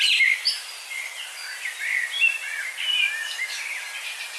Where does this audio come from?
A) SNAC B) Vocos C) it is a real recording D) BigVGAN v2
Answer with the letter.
C